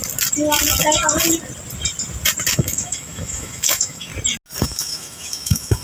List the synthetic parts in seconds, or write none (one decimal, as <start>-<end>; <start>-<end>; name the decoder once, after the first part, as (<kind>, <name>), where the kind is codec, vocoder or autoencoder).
2.5-4.1 (autoencoder, DAC-VAE); 4.6-5.8